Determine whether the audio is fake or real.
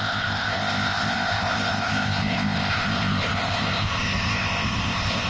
fake